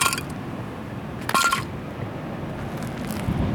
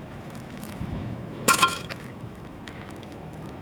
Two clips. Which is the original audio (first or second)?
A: first